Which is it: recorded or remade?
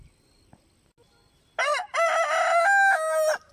recorded